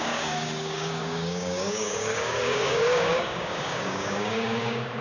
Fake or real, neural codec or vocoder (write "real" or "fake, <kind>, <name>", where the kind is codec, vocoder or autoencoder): fake, codec, DAC